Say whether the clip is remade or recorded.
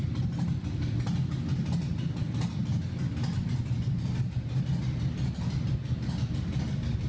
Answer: recorded